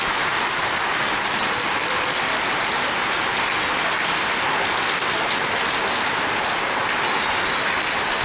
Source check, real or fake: real